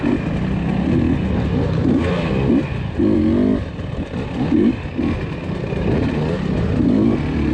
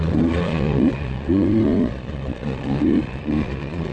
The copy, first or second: second